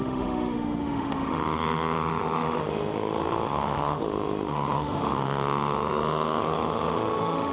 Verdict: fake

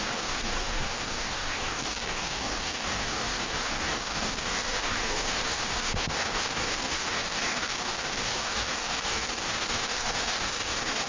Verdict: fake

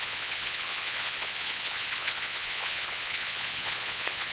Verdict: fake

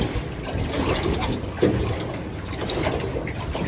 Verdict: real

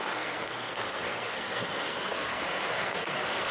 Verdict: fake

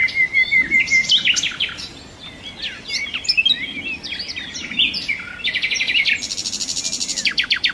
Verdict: real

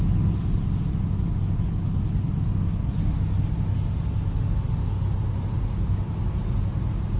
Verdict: real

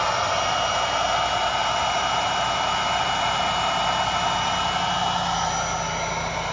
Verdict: real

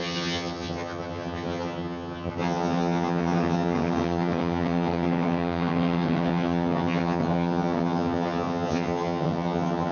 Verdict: fake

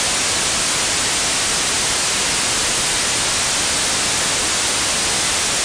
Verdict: real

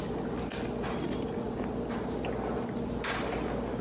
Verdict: real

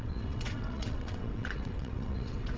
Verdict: fake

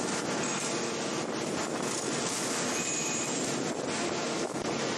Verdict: real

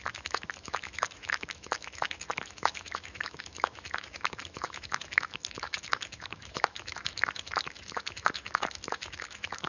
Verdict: fake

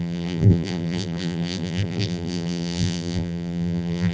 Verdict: fake